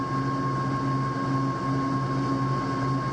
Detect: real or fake real